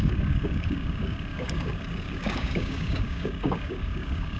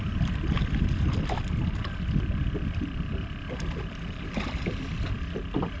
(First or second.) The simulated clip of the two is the first